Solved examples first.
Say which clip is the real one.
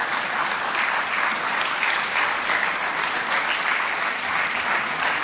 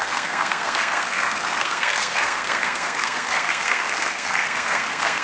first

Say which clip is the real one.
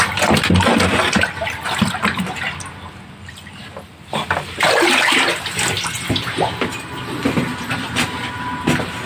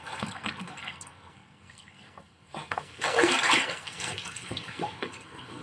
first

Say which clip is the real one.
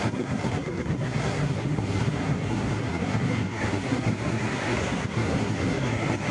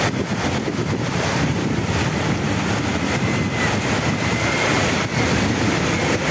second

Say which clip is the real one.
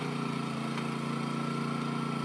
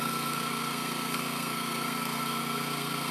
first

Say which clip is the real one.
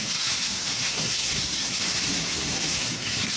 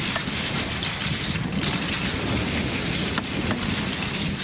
second